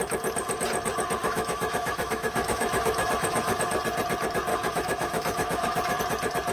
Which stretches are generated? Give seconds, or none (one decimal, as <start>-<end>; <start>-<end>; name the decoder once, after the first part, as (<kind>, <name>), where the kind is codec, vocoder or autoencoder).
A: 1.2-3.6 (autoencoder, DAC-VAE); 4.5-6.0